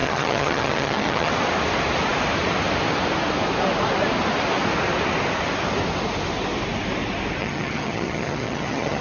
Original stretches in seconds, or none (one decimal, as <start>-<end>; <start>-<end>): 1.3-7.4

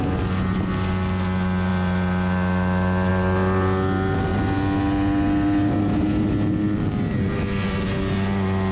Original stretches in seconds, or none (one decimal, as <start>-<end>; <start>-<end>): 0.0-8.7

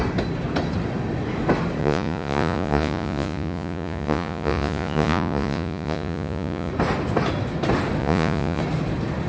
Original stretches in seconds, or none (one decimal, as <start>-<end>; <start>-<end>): 0.0-1.8; 6.7-8.0; 8.6-9.3

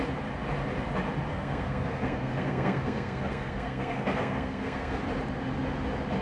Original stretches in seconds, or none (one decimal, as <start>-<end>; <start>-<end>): 0.0-1.3; 5.0-6.2

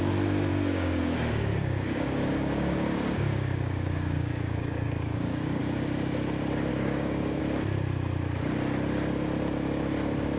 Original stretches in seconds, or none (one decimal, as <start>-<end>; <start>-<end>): 0.0-0.5; 5.6-6.7; 7.4-10.4

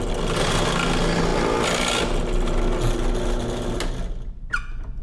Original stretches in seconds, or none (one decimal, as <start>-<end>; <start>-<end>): 0.0-5.0